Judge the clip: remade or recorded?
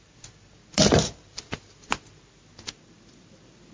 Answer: recorded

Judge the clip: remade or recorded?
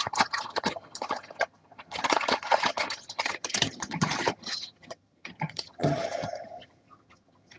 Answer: remade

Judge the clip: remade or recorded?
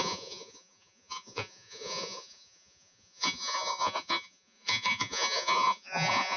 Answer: remade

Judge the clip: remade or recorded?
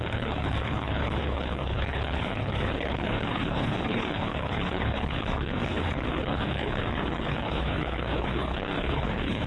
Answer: remade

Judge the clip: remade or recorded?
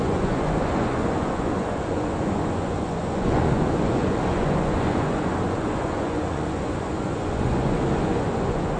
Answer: remade